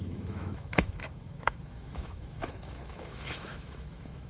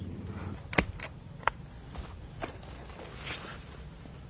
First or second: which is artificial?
first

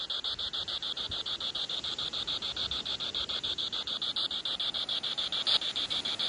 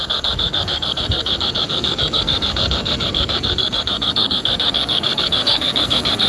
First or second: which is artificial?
second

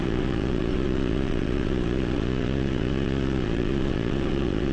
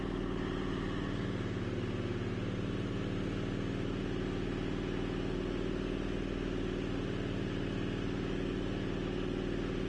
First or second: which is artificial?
first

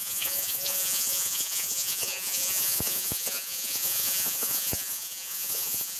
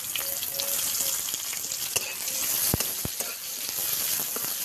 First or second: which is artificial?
first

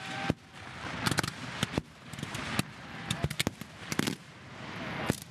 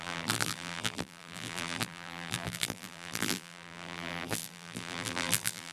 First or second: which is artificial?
second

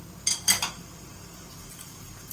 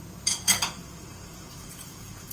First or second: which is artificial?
second